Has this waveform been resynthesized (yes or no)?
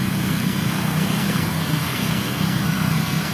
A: yes